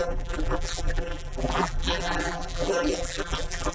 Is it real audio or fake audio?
fake